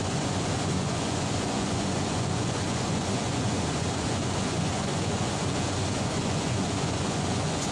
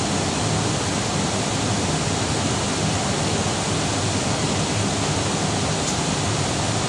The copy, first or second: first